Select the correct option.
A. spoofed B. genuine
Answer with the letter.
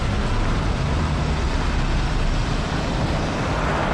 B